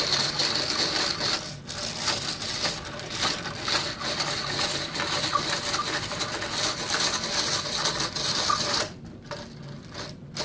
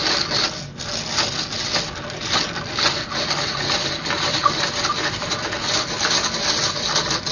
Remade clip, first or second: first